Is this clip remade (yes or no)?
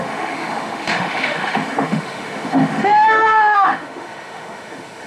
yes